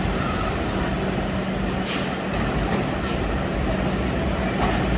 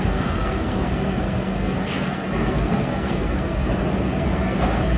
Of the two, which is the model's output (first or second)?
second